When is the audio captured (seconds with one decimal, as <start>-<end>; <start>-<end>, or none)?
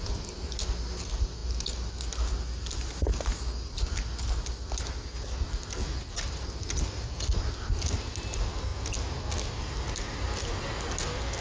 0.0-11.4